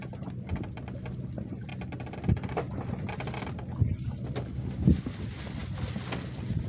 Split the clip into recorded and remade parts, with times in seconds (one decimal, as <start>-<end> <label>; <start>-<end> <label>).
0.0-6.7 recorded